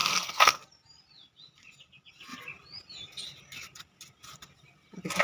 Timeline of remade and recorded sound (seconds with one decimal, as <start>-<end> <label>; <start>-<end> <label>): 0.0-0.6 remade; 0.6-5.2 recorded